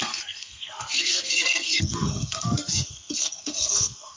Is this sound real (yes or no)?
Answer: no